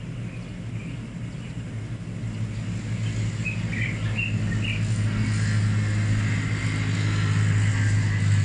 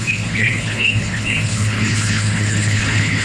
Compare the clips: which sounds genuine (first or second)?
first